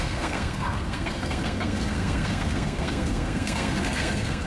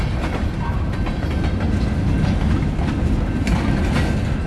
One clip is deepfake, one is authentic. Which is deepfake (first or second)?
first